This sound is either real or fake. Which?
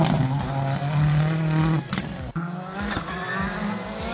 real